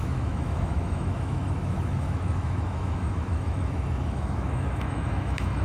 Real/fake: fake